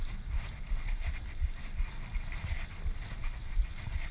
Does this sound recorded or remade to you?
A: recorded